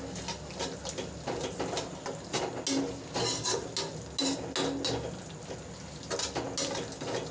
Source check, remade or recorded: recorded